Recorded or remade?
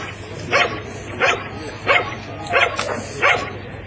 recorded